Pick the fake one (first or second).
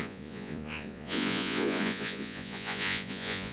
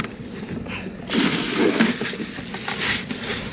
first